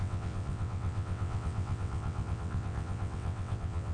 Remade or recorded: remade